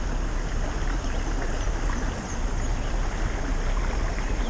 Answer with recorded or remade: recorded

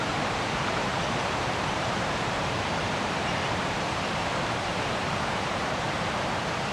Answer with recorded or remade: remade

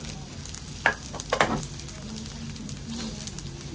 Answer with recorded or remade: recorded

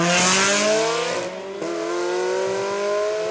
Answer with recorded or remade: recorded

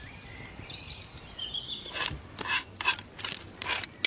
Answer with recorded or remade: recorded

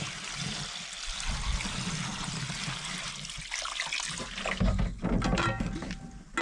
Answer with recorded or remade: recorded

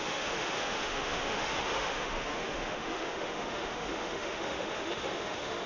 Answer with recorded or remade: remade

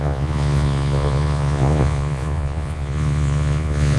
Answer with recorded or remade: remade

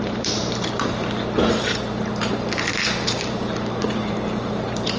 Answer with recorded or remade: remade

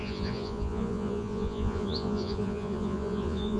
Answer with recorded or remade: remade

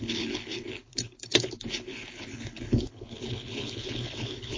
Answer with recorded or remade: remade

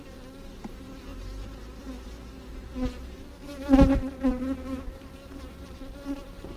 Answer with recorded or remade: recorded